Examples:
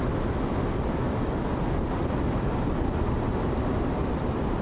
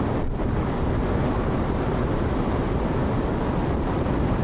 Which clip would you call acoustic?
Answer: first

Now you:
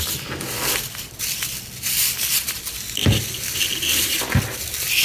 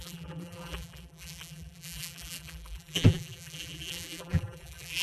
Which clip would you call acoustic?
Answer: first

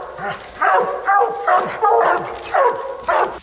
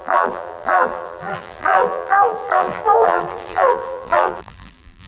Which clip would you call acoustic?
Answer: first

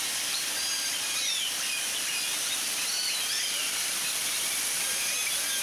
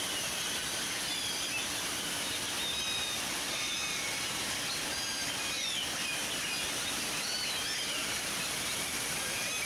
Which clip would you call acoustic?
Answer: second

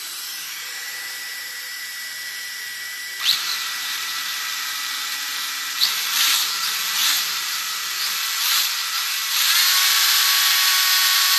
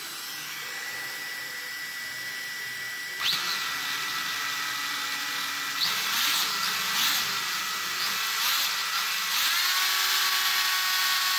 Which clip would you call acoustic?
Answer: second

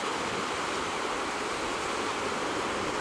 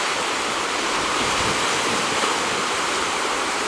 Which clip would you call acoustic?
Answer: first